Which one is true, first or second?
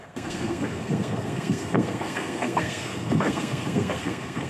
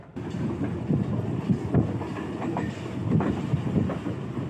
second